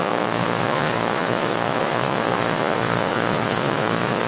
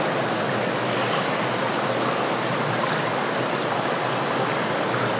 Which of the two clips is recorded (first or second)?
second